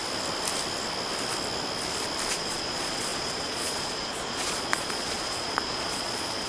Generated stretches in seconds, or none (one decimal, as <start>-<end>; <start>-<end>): 2.3-6.5